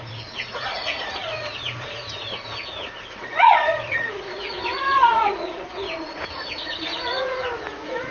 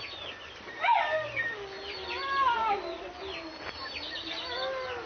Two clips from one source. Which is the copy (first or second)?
first